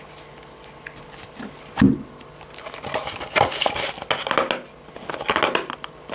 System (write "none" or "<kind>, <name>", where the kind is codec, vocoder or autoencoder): none